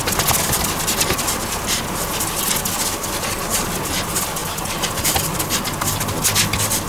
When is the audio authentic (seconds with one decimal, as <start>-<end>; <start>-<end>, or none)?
0.0-4.4; 5.4-6.9